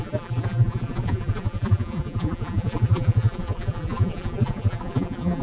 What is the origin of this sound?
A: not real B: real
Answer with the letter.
A